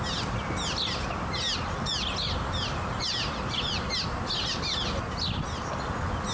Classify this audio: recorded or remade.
recorded